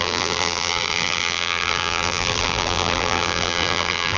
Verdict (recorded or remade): remade